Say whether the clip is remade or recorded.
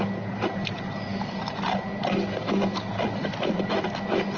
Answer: recorded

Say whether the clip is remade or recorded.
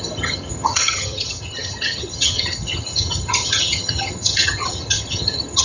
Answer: remade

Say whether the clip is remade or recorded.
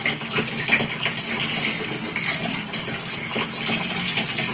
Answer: recorded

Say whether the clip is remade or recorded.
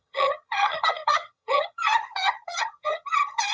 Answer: remade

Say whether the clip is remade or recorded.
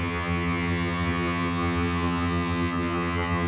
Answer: remade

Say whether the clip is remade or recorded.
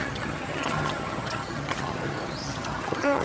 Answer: remade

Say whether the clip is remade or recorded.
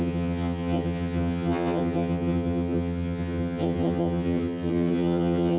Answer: remade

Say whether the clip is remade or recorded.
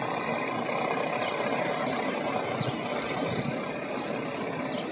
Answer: recorded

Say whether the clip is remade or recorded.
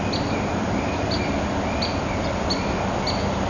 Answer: recorded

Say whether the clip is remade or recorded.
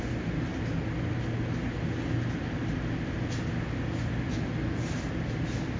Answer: recorded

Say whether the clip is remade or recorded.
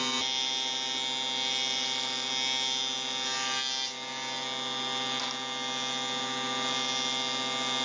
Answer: recorded